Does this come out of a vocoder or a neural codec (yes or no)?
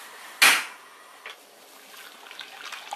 no